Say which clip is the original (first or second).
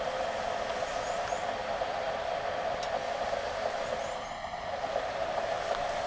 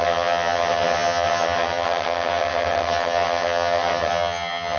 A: first